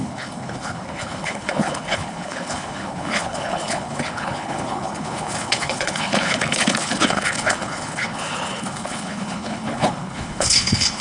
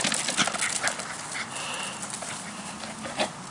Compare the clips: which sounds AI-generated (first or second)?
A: first